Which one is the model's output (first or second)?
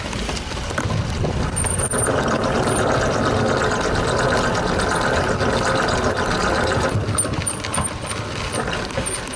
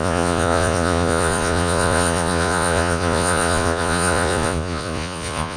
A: second